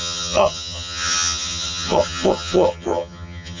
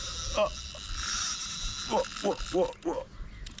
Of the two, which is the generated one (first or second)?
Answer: first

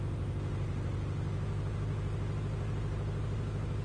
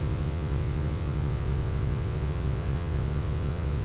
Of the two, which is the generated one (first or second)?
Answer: second